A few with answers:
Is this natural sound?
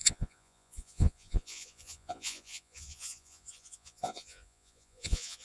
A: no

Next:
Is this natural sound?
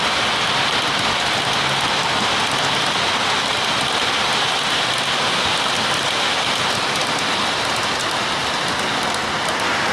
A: yes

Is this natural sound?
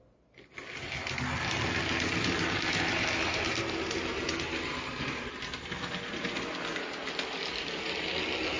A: yes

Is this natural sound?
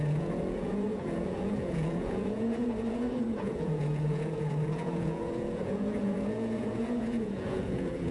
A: no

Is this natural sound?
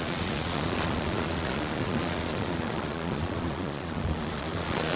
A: no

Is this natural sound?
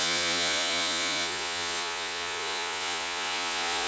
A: no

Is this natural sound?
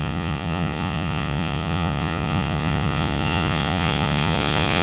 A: no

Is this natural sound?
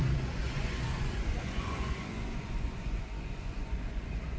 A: no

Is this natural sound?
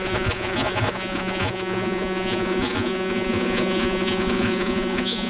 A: no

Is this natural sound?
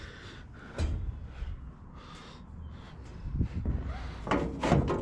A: yes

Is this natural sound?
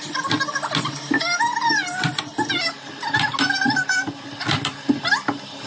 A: yes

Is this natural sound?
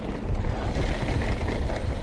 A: yes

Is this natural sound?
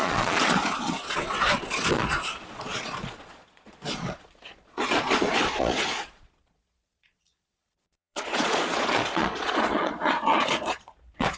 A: no